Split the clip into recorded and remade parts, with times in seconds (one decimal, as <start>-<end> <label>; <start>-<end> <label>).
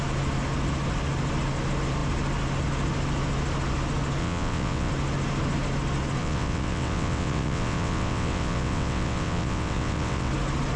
0.0-4.2 recorded; 4.2-4.9 remade; 4.9-6.2 recorded; 6.2-10.3 remade; 10.3-10.8 recorded